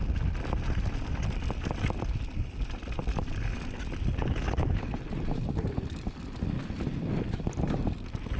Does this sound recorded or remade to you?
recorded